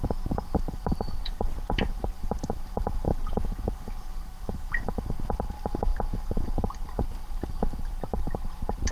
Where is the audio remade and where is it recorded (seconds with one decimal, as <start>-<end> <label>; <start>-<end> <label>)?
0.0-3.1 recorded; 3.1-4.2 remade; 4.2-8.9 recorded

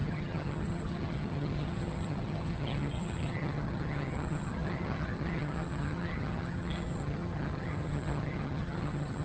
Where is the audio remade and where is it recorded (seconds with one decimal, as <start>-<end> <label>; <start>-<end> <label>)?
0.0-9.2 remade

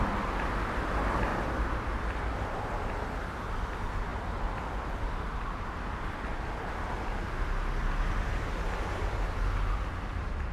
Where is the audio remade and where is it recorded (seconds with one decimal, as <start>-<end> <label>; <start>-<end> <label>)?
0.0-1.3 recorded; 1.3-2.3 remade; 2.3-10.5 recorded

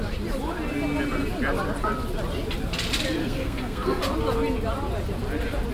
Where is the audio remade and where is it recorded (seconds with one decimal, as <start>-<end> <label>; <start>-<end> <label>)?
0.0-3.2 recorded; 3.2-4.0 remade; 4.0-5.7 recorded

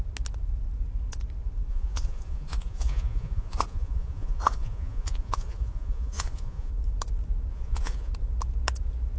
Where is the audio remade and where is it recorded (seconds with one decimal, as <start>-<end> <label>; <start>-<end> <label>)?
0.0-1.7 recorded; 1.7-6.7 remade; 6.7-7.5 recorded; 7.5-8.1 remade; 8.1-9.2 recorded

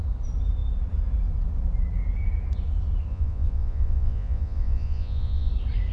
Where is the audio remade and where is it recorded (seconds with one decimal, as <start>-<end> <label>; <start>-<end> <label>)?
0.0-3.1 recorded; 3.1-5.5 remade; 5.5-5.9 recorded

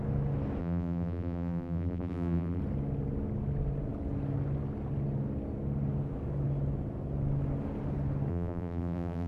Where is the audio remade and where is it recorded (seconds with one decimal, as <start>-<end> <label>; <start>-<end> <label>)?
0.0-0.6 recorded; 0.6-2.6 remade; 2.6-8.3 recorded; 8.3-9.3 remade

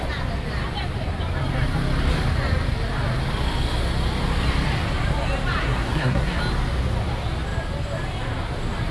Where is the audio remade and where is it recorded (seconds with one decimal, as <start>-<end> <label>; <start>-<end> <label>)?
0.0-5.6 recorded; 5.6-6.4 remade; 6.4-8.9 recorded